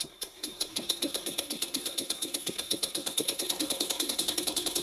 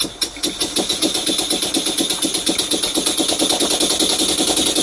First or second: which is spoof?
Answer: first